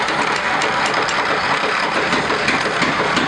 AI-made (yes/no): no